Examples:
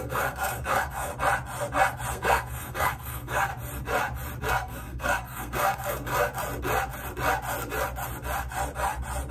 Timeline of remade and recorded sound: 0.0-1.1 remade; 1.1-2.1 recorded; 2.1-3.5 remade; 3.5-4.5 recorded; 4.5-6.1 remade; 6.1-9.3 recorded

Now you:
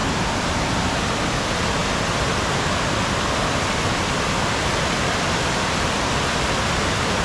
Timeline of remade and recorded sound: 0.0-7.2 recorded